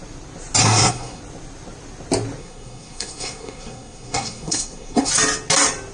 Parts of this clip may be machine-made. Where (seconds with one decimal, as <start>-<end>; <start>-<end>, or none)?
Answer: 0.6-1.2; 2.4-5.1